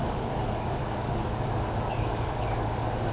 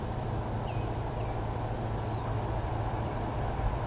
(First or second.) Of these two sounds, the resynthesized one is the first